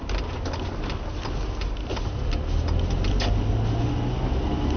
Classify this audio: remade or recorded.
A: recorded